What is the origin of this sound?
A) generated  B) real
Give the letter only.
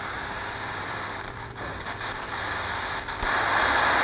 B